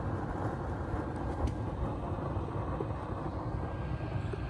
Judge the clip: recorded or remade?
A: recorded